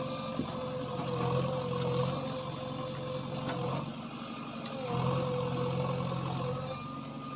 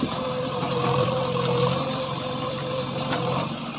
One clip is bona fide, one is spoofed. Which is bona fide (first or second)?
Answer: first